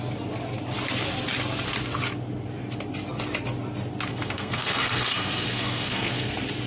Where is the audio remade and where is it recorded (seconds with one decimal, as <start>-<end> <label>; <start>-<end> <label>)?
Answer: 0.0-4.1 recorded; 4.1-6.3 remade; 6.3-6.7 recorded